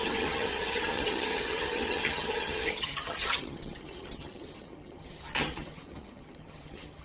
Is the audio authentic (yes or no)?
no